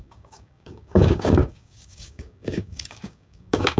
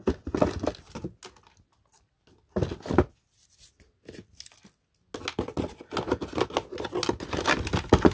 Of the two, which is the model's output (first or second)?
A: first